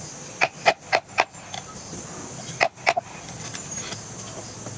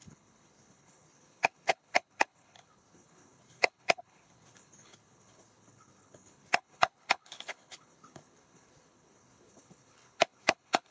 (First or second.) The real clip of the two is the first